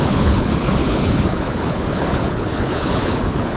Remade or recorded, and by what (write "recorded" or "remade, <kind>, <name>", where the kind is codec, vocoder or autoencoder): remade, codec, HILCodec